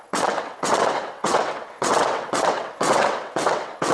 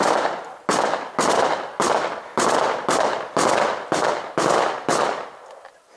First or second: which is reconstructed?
first